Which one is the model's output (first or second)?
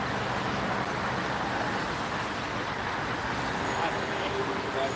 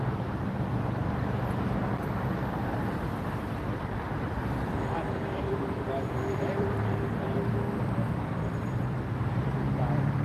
second